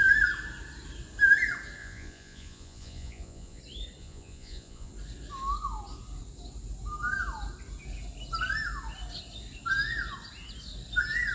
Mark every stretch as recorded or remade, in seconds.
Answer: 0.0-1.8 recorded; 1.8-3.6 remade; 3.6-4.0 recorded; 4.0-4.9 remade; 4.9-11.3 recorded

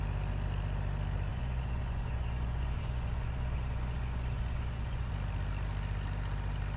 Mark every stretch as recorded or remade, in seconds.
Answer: 0.0-1.3 recorded; 1.3-5.1 remade; 5.1-6.8 recorded

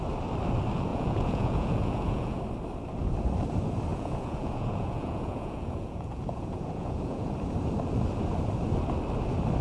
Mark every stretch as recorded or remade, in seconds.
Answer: 0.0-0.9 recorded; 0.9-2.4 remade; 2.4-3.9 recorded; 3.9-7.3 remade; 7.3-9.6 recorded

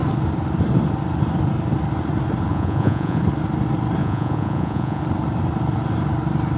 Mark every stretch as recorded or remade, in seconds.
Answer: 0.0-2.5 recorded; 2.5-3.2 remade; 3.2-4.0 recorded; 4.0-5.0 remade; 5.0-6.6 recorded

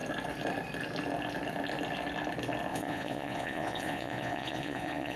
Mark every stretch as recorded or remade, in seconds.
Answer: 0.0-2.7 recorded; 2.7-5.2 remade

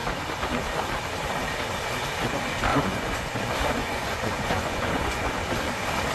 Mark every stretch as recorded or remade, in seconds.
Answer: 0.0-2.7 recorded; 2.7-3.4 remade; 3.4-3.8 recorded; 3.8-5.3 remade; 5.3-6.1 recorded